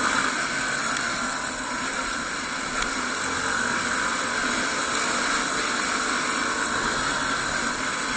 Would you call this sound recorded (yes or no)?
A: yes